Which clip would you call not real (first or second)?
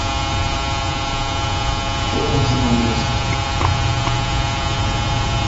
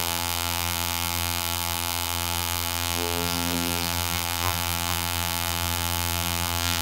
second